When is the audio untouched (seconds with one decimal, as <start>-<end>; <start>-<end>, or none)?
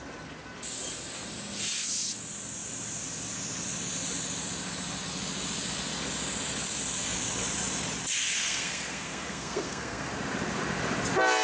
0.0-8.2; 10.1-11.4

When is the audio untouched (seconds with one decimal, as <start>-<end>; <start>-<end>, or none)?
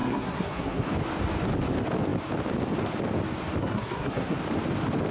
0.9-3.6; 4.4-5.1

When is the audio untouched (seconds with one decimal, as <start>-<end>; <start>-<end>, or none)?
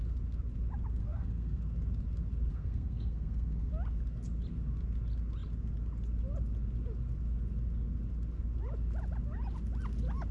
0.0-1.0; 1.6-2.5; 3.7-10.3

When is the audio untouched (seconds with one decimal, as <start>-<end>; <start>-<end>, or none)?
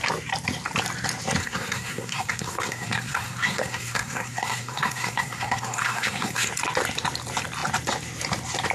0.0-1.4; 6.5-8.7